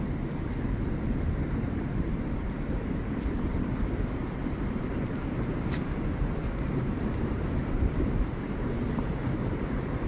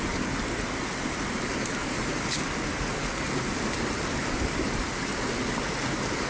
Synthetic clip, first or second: first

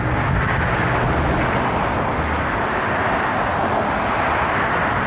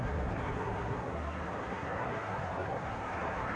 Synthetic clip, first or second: second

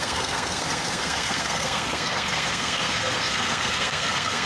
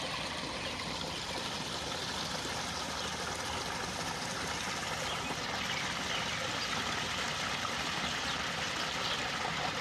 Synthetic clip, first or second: first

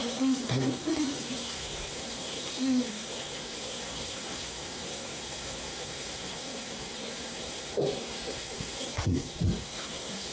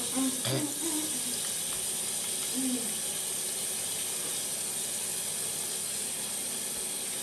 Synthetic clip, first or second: first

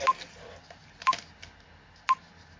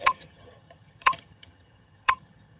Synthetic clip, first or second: second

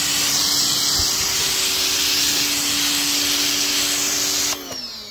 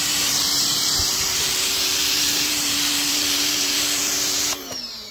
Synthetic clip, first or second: second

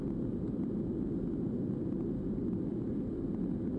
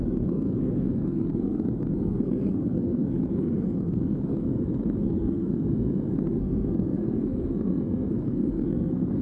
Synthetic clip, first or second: second